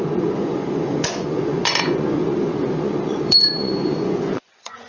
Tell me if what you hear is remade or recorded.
remade